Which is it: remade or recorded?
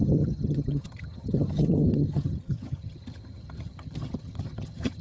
remade